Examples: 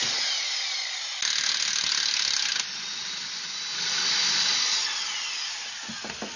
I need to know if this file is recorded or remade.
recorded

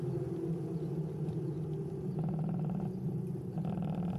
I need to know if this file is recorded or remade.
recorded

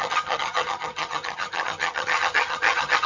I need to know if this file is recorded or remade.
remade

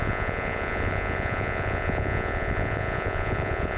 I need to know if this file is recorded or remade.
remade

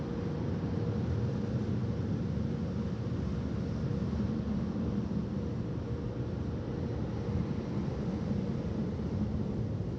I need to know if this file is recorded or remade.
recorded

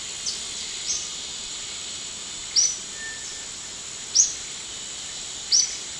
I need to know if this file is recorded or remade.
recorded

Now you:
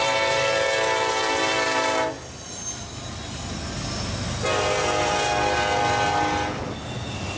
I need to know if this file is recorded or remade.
recorded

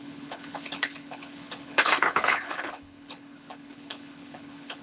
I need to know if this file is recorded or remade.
remade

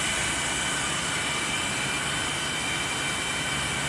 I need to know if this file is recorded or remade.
recorded